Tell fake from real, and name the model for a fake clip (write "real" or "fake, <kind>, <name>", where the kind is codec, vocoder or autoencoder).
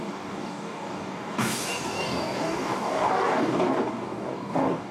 fake, codec, DAC